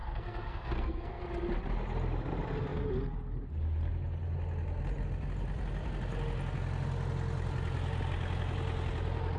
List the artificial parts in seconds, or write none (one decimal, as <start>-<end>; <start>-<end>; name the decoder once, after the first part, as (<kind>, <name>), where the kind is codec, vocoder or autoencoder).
0.0-1.2 (codec, SNAC)